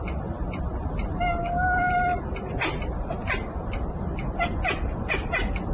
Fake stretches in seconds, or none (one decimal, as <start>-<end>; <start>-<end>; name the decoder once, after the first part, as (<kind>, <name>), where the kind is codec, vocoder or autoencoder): 1.4-1.9 (codec, DAC)